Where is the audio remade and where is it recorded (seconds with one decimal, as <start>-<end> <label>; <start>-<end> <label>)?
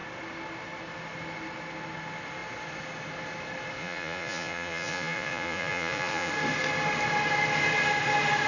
0.0-3.8 recorded; 3.8-6.3 remade; 6.3-8.5 recorded